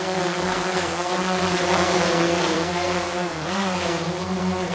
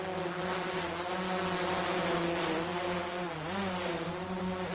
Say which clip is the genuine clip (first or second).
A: second